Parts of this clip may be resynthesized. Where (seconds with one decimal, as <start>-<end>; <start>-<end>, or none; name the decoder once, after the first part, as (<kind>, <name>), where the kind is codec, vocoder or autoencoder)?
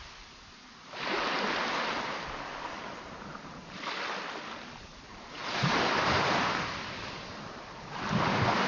4.9-8.7 (vocoder, BigVGAN v2)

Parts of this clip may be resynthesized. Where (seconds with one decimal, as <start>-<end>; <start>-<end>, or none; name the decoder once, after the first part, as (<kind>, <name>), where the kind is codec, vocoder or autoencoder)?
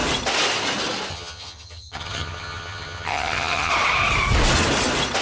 1.1-3.7 (vocoder, HiFi-GAN)